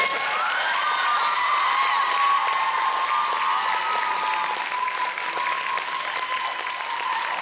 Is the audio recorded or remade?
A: recorded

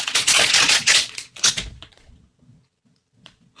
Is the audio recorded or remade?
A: remade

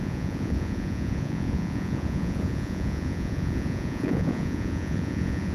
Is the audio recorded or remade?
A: remade